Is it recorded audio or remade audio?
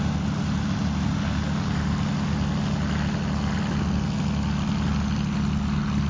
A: recorded